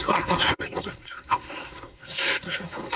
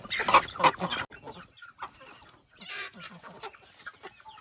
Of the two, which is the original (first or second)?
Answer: second